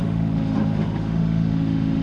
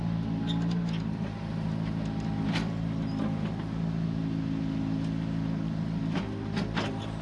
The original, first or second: second